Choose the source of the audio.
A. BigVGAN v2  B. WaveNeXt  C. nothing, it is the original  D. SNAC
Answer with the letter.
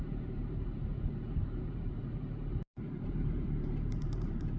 A